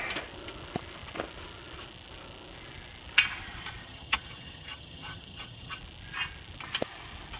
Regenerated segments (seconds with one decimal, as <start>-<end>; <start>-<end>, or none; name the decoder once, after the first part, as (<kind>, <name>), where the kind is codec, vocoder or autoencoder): 3.8-5.8 (vocoder, HiFi-GAN)